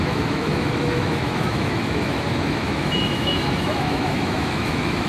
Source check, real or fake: fake